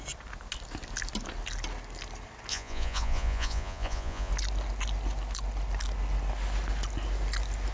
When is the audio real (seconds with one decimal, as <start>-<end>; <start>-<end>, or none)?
0.0-2.5; 4.3-7.7